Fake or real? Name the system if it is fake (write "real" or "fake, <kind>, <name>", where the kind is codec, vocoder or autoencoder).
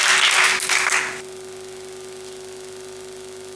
real